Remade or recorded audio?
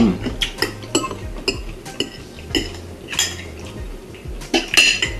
recorded